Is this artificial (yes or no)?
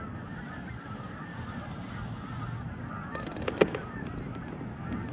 no